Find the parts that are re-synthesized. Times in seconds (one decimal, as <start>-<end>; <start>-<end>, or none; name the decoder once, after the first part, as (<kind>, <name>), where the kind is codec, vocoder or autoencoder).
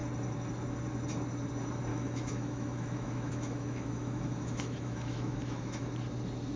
1.9-5.9 (autoencoder, DAC-VAE)